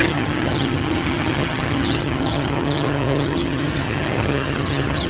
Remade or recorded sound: remade